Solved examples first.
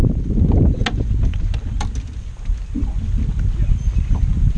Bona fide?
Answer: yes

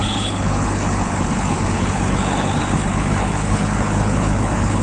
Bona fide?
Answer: no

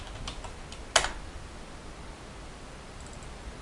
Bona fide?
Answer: yes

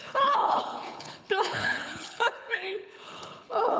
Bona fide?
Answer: no